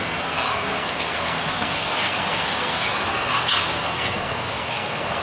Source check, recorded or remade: remade